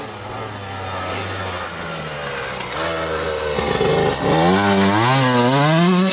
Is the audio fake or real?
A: real